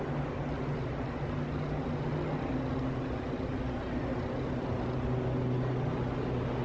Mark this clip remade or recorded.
recorded